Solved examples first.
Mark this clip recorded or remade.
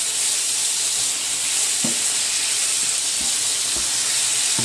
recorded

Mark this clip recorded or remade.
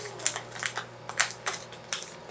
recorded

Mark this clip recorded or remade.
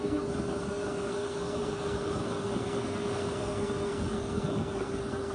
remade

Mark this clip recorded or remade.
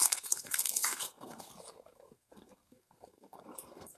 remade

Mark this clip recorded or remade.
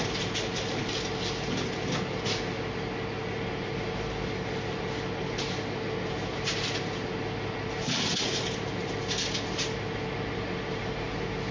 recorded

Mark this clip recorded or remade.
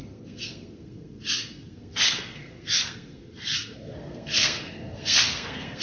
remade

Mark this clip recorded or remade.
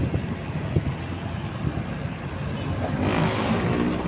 recorded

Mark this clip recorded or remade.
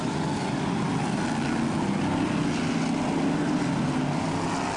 recorded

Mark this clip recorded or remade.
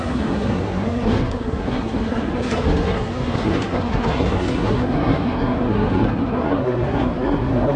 remade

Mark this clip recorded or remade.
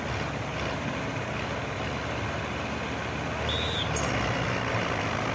recorded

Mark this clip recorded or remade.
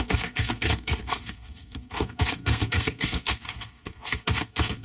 remade